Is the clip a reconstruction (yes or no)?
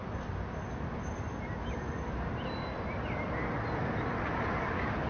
no